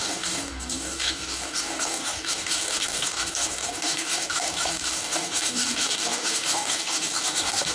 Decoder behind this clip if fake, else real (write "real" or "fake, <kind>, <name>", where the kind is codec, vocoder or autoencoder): fake, codec, DAC